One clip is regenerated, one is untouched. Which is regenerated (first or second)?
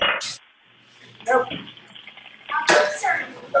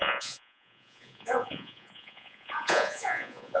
second